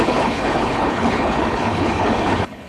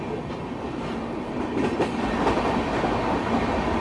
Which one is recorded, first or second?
second